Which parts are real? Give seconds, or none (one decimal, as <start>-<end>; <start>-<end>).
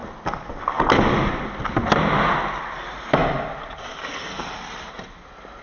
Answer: 0.0-5.6